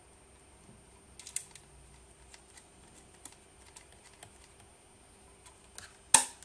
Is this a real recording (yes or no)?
yes